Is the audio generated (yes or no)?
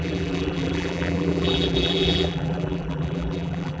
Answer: yes